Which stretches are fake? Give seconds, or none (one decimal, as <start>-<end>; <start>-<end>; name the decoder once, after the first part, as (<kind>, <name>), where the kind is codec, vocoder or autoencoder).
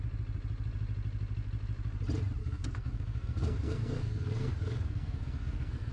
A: 2.4-5.9 (codec, SNAC)